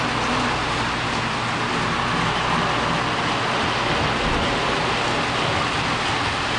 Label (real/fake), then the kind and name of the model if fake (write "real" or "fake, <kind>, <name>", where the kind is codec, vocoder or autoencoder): real